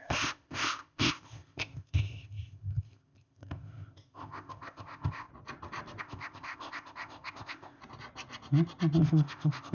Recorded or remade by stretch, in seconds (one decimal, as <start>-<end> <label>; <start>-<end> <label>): 0.0-5.3 remade; 5.3-6.0 recorded; 6.0-7.8 remade; 7.8-9.0 recorded; 9.0-9.7 remade